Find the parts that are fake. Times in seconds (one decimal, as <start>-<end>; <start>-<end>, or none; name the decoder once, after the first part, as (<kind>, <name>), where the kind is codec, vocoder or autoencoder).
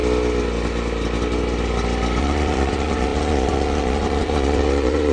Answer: 2.2-5.1 (vocoder, Vocos)